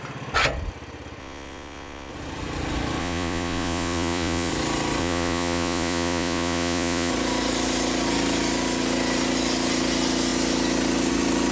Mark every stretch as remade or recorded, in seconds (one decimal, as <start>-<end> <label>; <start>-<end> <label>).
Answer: 0.0-1.2 recorded; 1.2-2.1 remade; 2.1-3.0 recorded; 3.0-4.5 remade; 4.5-5.0 recorded; 5.0-7.1 remade; 7.1-11.5 recorded